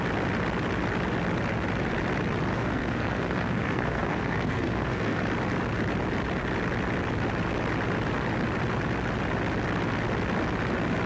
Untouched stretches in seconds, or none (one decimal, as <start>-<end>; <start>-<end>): 0.0-2.5; 5.2-11.1